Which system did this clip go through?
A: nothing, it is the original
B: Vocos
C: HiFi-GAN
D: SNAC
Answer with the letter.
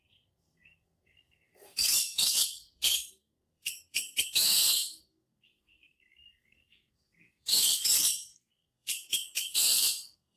D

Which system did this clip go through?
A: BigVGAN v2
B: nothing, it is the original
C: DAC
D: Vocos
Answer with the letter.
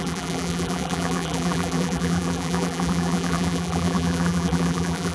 A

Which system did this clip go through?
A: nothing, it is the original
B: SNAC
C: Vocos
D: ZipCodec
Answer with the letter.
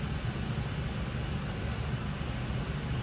A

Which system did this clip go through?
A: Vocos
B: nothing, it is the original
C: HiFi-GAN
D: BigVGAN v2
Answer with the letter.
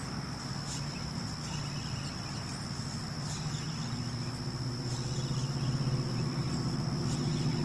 B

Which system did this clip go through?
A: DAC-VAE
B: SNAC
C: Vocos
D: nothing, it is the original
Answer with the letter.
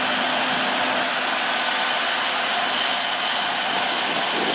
D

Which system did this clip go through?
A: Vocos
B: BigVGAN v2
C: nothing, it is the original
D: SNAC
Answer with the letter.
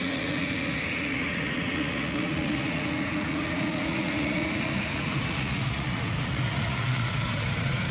A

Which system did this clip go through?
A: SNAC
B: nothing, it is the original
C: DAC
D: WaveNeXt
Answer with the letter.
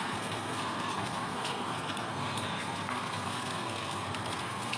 A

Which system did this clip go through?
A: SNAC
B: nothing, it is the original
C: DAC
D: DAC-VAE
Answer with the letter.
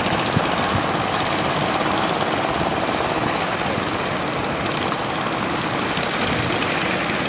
B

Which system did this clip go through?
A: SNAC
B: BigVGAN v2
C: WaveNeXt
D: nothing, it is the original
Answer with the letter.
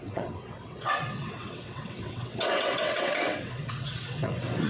C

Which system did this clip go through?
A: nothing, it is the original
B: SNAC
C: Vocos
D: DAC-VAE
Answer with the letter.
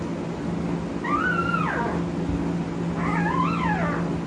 A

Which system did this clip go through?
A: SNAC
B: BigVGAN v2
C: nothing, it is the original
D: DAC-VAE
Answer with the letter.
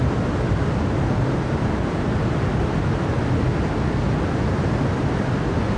C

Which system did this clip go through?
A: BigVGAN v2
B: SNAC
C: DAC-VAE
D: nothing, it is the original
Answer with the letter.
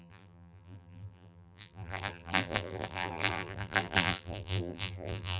A